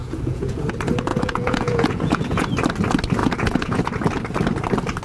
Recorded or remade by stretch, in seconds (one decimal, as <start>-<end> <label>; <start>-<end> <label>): 0.0-0.6 remade; 0.6-1.1 recorded; 1.1-2.5 remade; 2.5-3.2 recorded; 3.2-3.8 remade; 3.8-5.0 recorded